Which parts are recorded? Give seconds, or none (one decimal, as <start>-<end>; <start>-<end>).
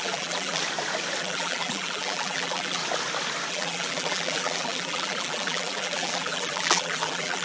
0.6-1.2; 2.8-3.5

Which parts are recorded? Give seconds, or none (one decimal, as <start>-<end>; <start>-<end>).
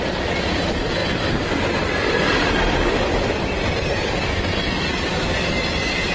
0.0-6.1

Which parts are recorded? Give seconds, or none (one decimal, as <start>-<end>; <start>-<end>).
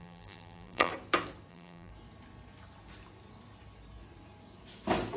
0.9-1.5; 1.9-5.2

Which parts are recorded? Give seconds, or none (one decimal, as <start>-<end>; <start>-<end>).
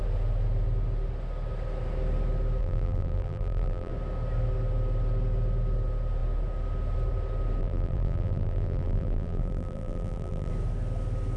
0.0-2.6; 3.9-7.6; 10.5-11.4